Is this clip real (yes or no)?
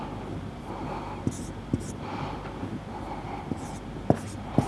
yes